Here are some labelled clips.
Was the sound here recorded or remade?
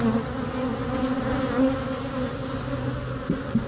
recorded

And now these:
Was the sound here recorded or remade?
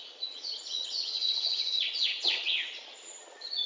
remade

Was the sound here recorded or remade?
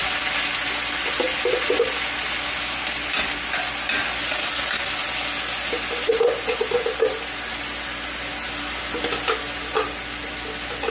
recorded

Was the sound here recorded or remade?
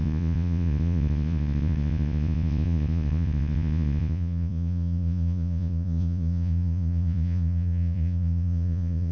remade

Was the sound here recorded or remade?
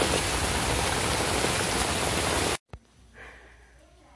recorded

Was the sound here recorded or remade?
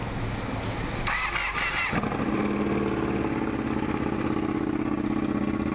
recorded